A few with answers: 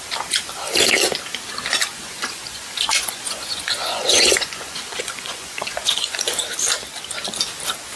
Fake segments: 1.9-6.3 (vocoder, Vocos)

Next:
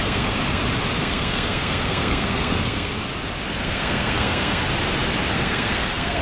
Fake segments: 0.0-0.6 (codec, SNAC); 1.0-2.9; 3.6-4.6; 5.3-6.2